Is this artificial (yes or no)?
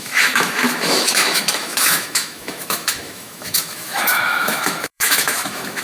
yes